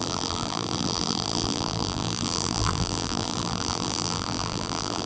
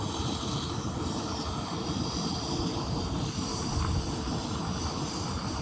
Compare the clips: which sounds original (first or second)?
second